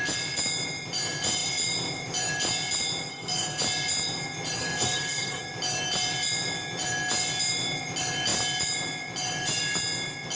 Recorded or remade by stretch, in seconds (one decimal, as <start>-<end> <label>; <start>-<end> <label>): 0.0-3.1 recorded; 3.1-3.6 remade; 3.6-4.6 recorded; 4.6-5.4 remade; 5.4-10.3 recorded